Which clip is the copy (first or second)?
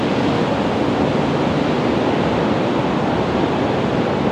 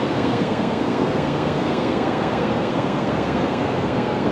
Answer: second